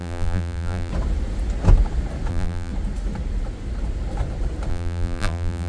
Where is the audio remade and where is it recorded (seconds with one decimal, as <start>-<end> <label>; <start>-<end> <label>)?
0.0-0.9 remade; 0.9-2.3 recorded; 2.3-2.7 remade; 2.7-4.7 recorded; 4.7-5.7 remade